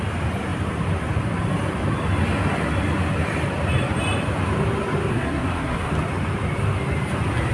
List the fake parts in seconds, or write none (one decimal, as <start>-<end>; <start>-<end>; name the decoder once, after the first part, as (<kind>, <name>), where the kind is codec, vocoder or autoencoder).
5.1-5.9 (codec, SNAC)